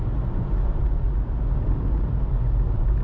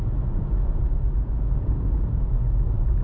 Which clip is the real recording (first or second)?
first